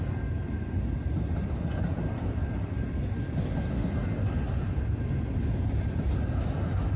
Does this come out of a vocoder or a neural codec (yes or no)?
no